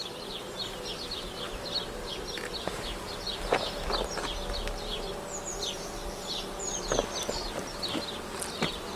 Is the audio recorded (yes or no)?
yes